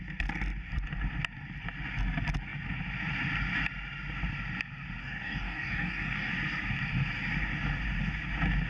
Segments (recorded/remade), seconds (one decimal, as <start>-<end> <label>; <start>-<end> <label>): 0.0-5.0 recorded; 5.0-6.3 remade; 6.3-8.7 recorded